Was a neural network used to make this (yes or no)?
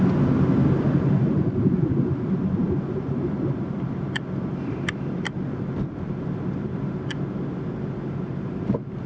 no